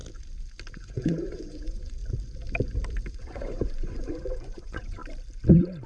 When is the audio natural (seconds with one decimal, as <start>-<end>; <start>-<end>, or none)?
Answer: 0.0-0.7; 2.0-3.1; 5.0-5.9